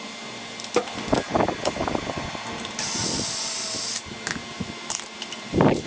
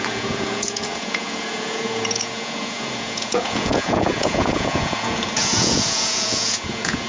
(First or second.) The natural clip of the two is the first